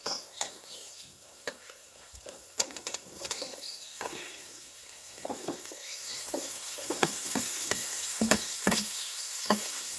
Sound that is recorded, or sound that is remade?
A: remade